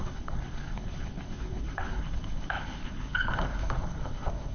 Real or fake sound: fake